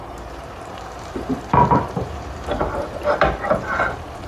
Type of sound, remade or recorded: remade